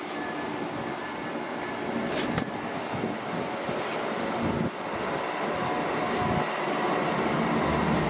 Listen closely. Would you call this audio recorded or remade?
recorded